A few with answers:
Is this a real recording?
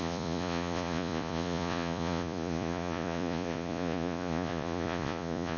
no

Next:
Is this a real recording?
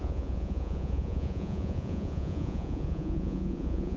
no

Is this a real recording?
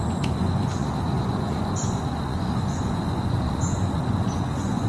no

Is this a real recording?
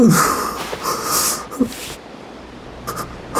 yes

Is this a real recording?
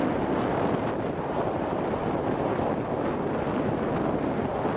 yes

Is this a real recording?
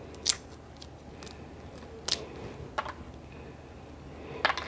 yes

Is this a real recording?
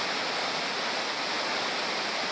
yes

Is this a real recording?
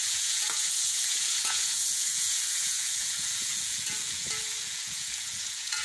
no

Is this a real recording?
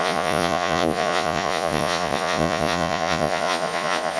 no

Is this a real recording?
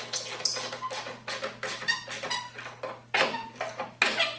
yes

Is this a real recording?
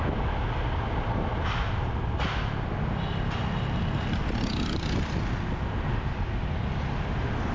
yes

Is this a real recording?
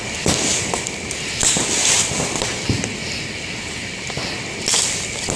yes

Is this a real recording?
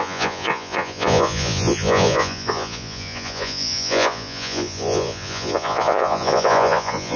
no